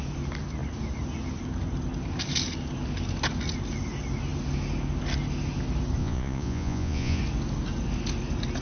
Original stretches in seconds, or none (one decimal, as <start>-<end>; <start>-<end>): 0.0-6.0; 7.2-8.6